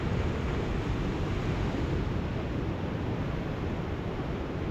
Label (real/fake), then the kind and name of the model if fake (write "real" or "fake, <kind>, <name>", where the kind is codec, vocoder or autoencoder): real